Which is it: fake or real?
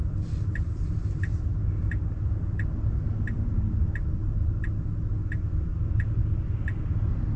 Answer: real